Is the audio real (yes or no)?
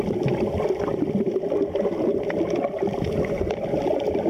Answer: yes